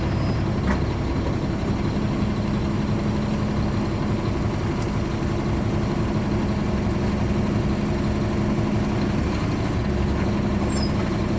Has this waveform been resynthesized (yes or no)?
no